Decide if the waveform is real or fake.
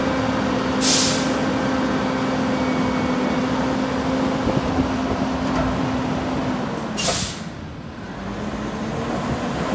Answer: real